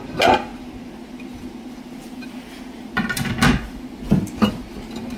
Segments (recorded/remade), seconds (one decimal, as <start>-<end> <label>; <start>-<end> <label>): 0.0-2.0 recorded; 2.0-2.9 remade; 2.9-5.2 recorded